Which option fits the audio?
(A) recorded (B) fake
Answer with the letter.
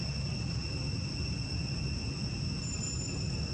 A